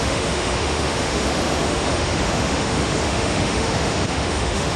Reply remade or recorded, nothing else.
remade